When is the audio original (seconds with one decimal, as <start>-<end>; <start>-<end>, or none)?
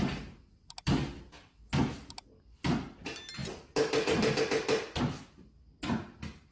0.0-6.5